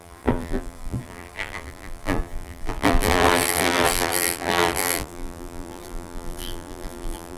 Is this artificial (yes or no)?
yes